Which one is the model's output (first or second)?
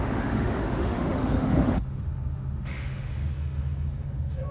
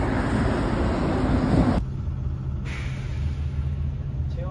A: first